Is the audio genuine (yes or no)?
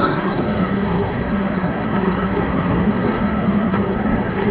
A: no